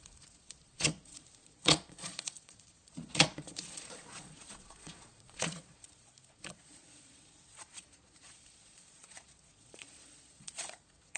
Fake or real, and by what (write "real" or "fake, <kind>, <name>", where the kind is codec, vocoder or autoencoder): fake, vocoder, Vocos